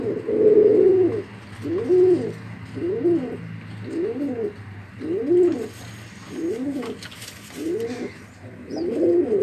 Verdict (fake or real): real